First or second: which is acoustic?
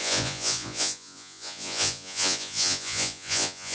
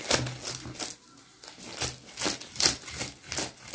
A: second